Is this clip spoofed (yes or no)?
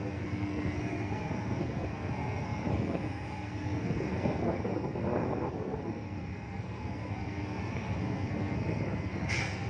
yes